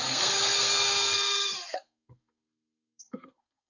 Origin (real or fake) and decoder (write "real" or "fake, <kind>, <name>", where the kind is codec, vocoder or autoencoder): fake, codec, SNAC